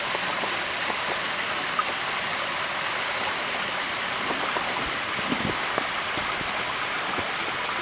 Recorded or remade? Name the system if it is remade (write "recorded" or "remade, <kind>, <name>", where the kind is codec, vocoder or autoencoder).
recorded